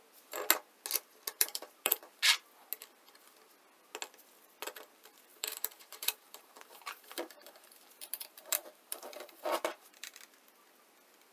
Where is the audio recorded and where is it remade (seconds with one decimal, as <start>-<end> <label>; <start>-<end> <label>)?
0.0-1.3 recorded; 1.3-2.1 remade; 2.1-5.3 recorded; 5.3-10.2 remade; 10.2-11.3 recorded